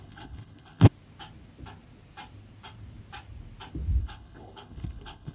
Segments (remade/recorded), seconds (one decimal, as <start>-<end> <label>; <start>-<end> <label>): 0.0-0.9 remade; 0.9-4.0 recorded; 4.0-5.3 remade